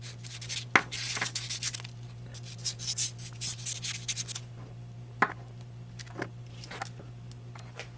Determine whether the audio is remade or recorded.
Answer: recorded